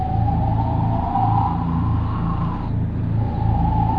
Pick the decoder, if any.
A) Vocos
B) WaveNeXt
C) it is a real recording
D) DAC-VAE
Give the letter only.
C